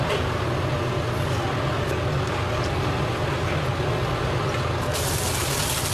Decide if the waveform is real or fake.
real